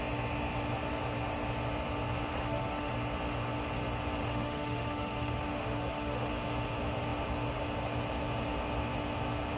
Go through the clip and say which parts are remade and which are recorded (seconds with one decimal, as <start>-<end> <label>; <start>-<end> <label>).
0.0-2.3 recorded; 2.3-2.9 remade; 2.9-4.2 recorded; 4.2-6.3 remade; 6.3-9.6 recorded